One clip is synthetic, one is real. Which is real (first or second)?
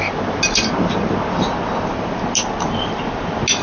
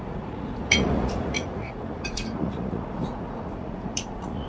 first